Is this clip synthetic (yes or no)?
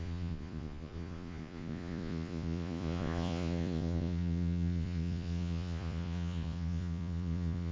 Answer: yes